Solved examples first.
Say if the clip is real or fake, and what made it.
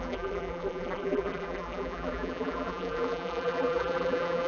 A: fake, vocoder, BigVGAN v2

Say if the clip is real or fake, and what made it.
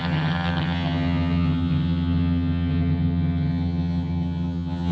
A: fake, vocoder, HiFi-GAN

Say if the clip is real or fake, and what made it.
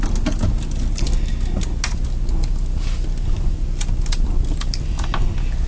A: real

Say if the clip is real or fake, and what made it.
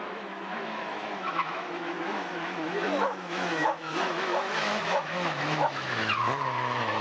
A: fake, autoencoder, DAC-VAE